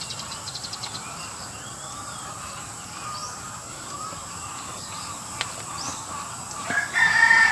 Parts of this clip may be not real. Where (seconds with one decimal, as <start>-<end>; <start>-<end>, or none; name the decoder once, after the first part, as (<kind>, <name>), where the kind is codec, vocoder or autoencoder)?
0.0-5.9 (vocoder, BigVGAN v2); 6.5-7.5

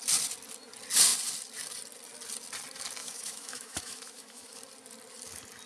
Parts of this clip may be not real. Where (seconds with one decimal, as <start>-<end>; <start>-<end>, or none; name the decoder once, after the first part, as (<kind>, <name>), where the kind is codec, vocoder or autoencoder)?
3.0-4.6 (autoencoder, DAC-VAE)

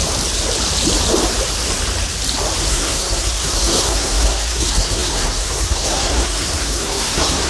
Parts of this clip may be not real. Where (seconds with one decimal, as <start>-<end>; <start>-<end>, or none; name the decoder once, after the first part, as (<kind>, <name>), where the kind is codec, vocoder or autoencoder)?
2.6-7.5 (codec, SNAC)